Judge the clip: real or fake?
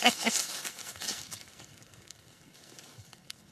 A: fake